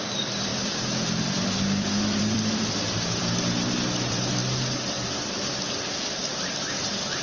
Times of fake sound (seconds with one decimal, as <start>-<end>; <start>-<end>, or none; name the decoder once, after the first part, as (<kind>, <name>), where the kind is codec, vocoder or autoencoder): 0.0-4.4 (vocoder, BigVGAN v2); 6.4-7.2